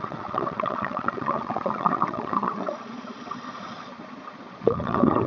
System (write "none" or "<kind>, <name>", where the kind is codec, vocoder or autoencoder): vocoder, Vocos